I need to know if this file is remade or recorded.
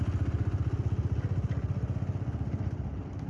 recorded